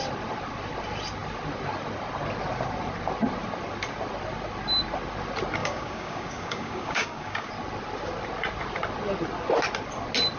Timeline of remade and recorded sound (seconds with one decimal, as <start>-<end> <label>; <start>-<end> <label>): 0.0-5.6 recorded; 5.6-7.5 remade; 7.5-10.4 recorded